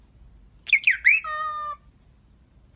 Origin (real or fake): real